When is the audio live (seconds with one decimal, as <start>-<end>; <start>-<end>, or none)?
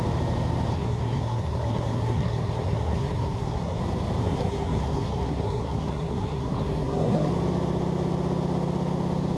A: 0.0-0.7; 3.8-4.2; 7.3-9.4